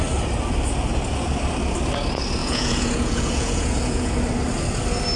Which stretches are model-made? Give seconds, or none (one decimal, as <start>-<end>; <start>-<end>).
2.4-4.1